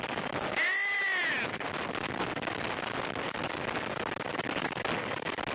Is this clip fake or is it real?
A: real